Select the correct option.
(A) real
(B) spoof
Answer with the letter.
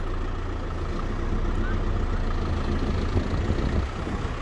A